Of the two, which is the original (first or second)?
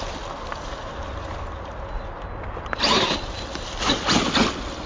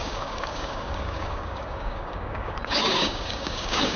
first